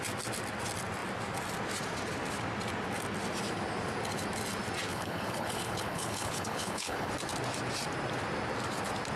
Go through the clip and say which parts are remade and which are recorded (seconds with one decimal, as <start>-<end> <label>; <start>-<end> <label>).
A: 0.0-4.9 recorded; 4.9-7.1 remade; 7.1-9.2 recorded